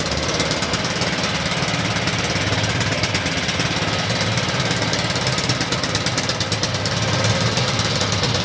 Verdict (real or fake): real